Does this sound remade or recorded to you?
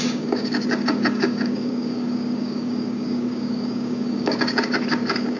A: remade